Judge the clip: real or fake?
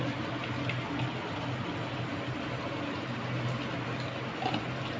real